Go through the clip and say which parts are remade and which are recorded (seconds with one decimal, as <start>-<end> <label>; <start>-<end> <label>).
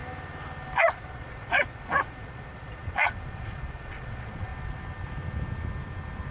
0.0-0.8 recorded; 0.8-4.5 remade; 4.5-6.3 recorded